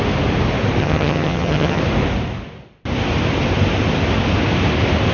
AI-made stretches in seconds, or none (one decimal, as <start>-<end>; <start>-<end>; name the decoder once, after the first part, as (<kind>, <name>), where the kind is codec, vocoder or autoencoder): 0.8-1.8 (vocoder, HiFi-GAN)